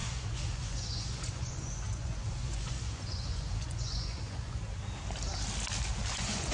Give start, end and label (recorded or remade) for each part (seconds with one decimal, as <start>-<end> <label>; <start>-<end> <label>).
0.0-4.6 remade; 4.6-6.1 recorded; 6.1-6.5 remade